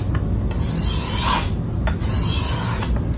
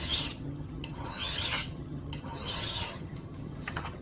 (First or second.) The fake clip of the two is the second